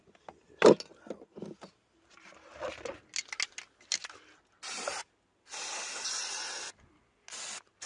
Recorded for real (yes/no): yes